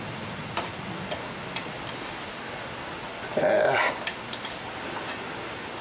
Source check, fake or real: real